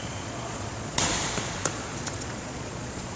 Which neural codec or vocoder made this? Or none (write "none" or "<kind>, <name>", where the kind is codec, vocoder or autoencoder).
vocoder, Vocos